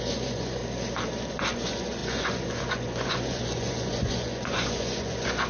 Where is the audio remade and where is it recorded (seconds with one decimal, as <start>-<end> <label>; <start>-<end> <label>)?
0.0-0.6 remade; 0.6-1.3 recorded; 1.3-5.5 remade